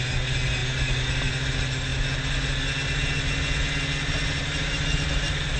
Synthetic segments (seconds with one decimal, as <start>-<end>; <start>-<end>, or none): none

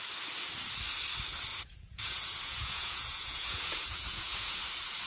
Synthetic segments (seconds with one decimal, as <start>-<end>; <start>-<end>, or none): 1.5-4.6

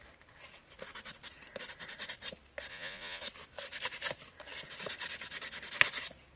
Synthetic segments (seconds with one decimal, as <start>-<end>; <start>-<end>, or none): 2.7-3.2

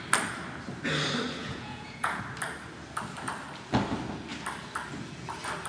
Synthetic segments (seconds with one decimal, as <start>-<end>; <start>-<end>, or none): 1.4-2.2

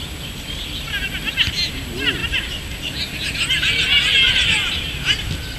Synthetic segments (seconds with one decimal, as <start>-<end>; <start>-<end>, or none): none

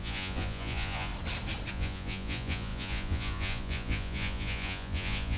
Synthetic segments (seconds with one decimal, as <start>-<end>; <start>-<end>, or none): 0.0-1.1; 1.7-5.4

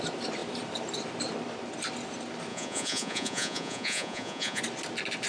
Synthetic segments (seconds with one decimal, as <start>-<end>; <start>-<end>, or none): 2.5-4.6